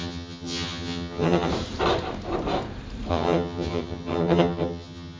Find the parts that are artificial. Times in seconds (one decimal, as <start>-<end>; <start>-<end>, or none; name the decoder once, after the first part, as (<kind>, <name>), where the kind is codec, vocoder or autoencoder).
0.0-1.5 (vocoder, HiFi-GAN); 3.1-5.2